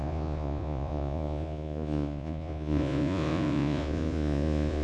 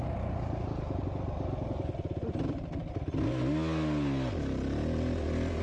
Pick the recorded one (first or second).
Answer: second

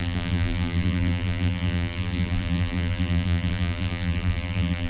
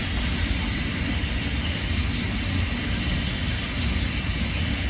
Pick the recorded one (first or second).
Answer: second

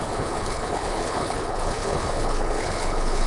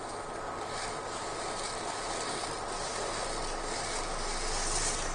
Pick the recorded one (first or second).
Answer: second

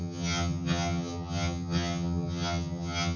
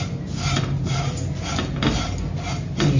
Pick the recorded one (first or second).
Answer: second